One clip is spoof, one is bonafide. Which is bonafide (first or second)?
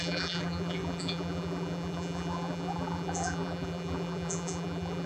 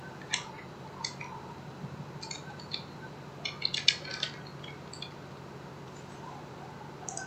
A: second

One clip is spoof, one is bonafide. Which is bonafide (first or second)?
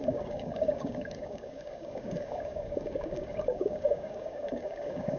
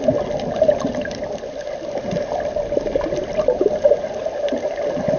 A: second